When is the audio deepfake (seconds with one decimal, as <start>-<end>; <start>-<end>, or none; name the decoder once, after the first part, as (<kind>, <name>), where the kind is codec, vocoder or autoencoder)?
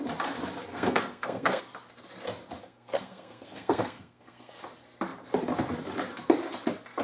0.7-1.6 (codec, SNAC); 2.6-4.5